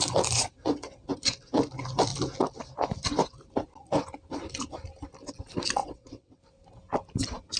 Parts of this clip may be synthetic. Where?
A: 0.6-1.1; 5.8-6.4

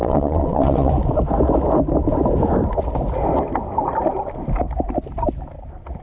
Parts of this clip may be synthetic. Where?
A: 0.0-0.9

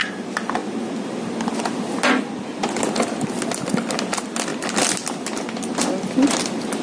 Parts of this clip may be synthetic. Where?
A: none

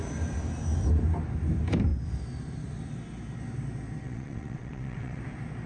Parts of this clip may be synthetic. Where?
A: 4.0-5.2

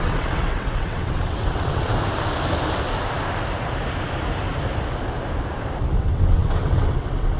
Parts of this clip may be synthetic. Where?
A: 0.0-1.9; 6.0-7.4

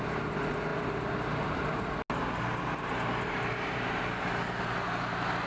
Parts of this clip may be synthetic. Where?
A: none